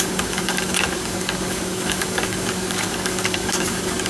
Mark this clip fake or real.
fake